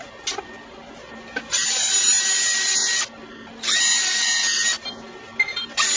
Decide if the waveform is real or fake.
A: real